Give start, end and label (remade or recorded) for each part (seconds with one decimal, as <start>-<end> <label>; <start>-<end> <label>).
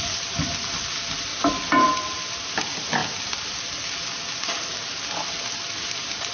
0.0-6.3 recorded